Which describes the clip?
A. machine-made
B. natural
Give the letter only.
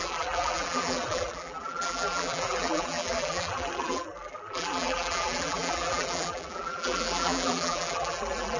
A